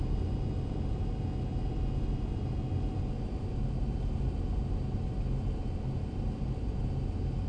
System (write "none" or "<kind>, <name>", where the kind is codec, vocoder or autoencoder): none